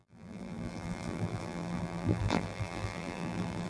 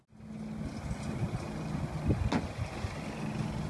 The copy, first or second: first